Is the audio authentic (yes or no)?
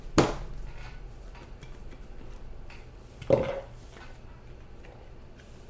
yes